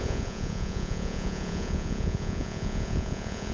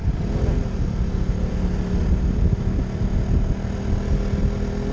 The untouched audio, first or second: second